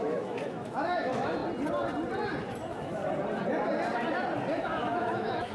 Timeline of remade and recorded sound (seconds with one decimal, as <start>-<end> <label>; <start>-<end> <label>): 0.0-1.4 remade; 1.4-2.4 recorded; 2.4-3.0 remade; 3.0-4.6 recorded; 4.6-5.5 remade